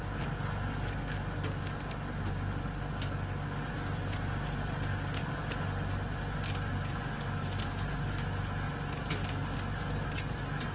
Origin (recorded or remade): recorded